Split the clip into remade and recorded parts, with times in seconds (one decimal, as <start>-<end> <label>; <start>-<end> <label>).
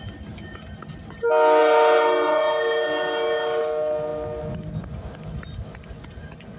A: 0.0-6.6 recorded